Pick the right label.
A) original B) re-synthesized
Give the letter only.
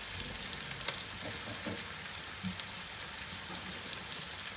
A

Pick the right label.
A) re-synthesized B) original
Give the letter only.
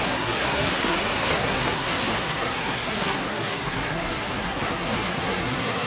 A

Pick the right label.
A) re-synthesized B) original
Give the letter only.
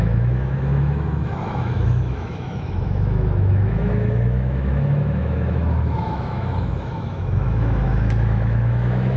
A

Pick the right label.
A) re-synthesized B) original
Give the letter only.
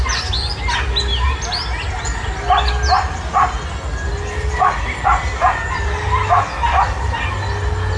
B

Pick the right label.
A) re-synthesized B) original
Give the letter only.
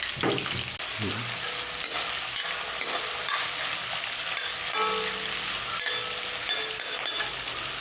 B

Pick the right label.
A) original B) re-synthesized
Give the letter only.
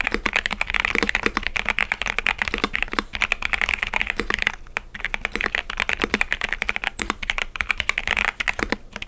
A